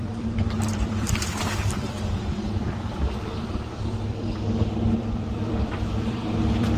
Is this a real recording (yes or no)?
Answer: no